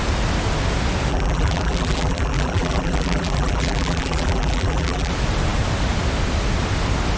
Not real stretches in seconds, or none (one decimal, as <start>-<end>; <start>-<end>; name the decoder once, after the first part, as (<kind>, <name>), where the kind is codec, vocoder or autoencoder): 1.1-5.1 (vocoder, BigVGAN v2)